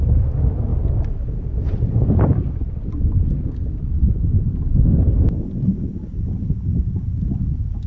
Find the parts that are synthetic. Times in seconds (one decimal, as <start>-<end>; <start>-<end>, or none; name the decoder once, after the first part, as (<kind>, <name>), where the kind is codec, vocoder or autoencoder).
6.1-7.3 (vocoder, BigVGAN v2)